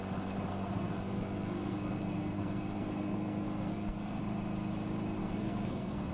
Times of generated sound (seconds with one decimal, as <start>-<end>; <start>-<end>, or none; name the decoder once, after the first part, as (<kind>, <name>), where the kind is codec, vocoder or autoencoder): 0.5-4.2 (codec, SNAC); 5.2-6.1